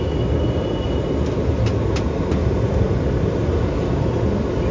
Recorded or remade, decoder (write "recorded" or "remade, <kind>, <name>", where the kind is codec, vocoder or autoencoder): recorded